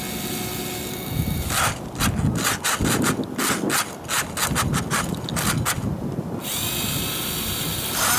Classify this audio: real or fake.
real